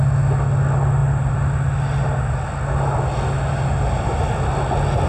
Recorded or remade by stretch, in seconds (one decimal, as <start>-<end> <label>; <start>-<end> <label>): 0.0-5.1 recorded